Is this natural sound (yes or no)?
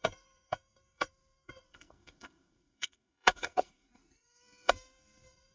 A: no